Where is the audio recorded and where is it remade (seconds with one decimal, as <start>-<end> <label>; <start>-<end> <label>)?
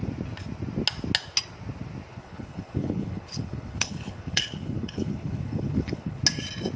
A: 0.0-2.1 recorded; 2.1-6.2 remade; 6.2-6.8 recorded